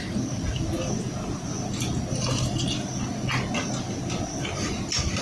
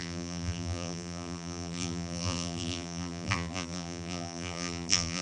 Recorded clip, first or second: first